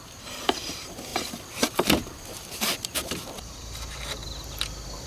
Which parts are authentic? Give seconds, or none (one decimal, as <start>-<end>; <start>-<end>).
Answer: 4.2-5.1